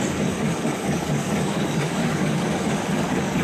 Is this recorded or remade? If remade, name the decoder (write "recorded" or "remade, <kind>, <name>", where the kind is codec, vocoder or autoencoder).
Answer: remade, codec, DAC